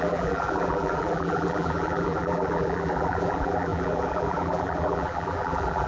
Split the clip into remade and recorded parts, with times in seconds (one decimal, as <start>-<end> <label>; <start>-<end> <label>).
0.0-5.9 remade